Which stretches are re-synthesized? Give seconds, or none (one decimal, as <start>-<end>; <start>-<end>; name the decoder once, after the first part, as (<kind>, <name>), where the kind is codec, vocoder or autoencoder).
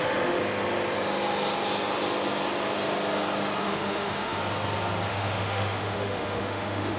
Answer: 0.0-0.4 (autoencoder, DAC-VAE); 3.6-4.4; 5.1-7.0